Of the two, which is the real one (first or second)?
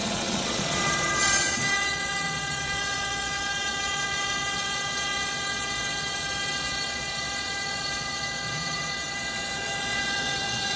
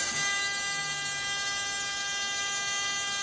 second